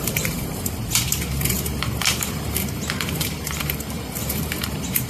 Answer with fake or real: fake